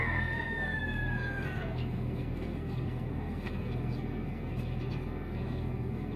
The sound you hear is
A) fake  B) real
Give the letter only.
A